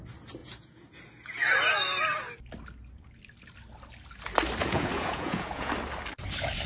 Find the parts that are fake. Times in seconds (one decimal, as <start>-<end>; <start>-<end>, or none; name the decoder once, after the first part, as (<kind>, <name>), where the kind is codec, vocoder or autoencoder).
0.4-0.9 (vocoder, Vocos); 4.6-5.7